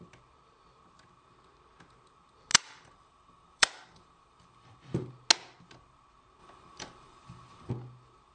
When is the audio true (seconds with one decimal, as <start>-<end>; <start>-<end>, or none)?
0.0-2.5; 5.1-6.4; 7.7-8.3